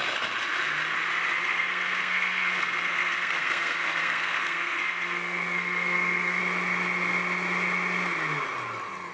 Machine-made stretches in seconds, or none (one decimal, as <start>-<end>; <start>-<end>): 1.4-6.4